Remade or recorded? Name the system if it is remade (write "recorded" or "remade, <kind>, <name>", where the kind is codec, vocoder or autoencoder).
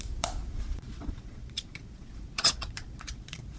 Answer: remade, vocoder, Vocos